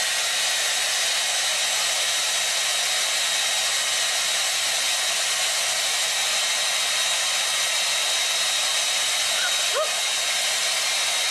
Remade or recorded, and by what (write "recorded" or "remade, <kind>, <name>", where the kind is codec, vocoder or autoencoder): recorded